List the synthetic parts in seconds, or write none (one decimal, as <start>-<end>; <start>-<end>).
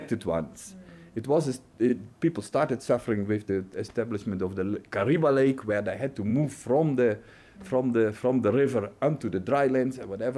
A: 0.0-0.6; 1.9-3.5; 5.0-5.7